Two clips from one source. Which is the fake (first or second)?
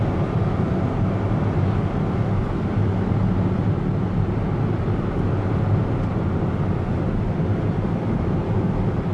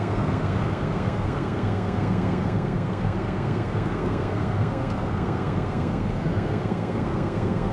second